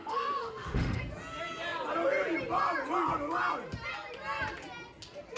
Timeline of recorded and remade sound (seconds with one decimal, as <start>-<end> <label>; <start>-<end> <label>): 0.0-1.0 remade; 1.0-5.4 recorded